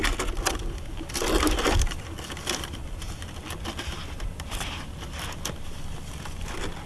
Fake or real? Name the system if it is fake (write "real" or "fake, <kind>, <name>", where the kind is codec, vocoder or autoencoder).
real